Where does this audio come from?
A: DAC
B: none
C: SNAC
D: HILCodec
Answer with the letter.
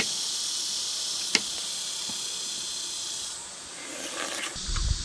B